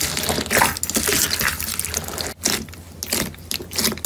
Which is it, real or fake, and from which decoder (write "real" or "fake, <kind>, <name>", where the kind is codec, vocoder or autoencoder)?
real